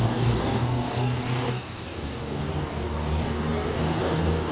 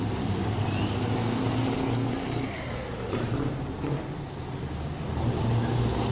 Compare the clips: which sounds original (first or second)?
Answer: second